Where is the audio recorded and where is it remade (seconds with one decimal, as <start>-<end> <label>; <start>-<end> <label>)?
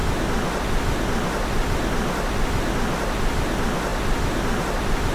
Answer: 0.0-5.1 recorded